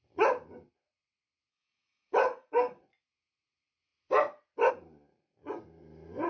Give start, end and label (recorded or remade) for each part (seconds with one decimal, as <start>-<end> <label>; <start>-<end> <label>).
0.0-1.5 recorded; 1.5-2.8 remade; 2.8-6.3 recorded